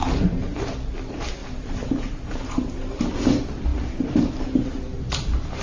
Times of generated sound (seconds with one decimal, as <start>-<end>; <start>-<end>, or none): 1.4-3.0